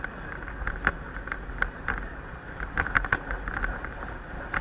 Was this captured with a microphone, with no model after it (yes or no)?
yes